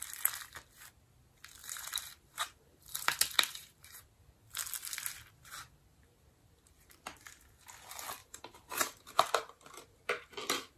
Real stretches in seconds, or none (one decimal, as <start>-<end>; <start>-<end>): 0.0-1.6; 4.1-8.2; 10.0-10.8